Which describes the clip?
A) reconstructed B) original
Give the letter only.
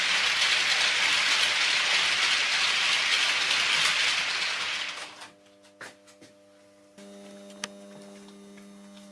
B